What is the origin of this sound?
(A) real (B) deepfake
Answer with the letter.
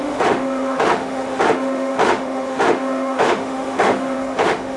B